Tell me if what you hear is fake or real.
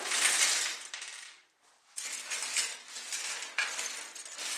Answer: real